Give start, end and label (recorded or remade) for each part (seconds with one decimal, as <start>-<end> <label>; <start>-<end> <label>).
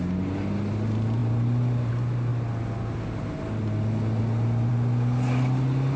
0.0-6.0 recorded